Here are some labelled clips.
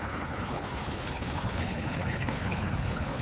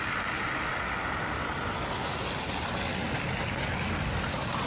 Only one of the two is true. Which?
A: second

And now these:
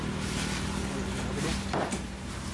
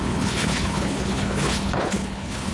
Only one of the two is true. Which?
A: first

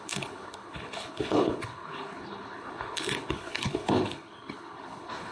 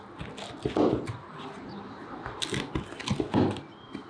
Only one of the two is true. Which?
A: second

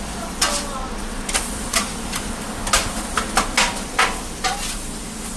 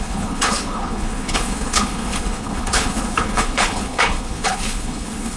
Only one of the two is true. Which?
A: first